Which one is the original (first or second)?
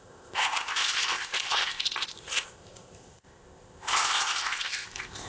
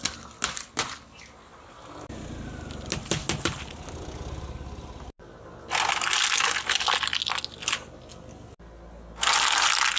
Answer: second